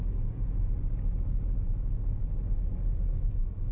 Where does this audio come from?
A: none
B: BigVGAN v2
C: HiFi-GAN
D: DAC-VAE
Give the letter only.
A